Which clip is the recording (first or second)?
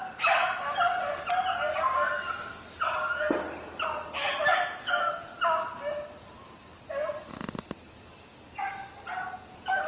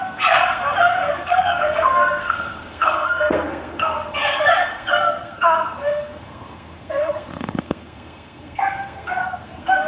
first